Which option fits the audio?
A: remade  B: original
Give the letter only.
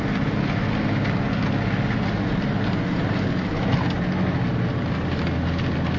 B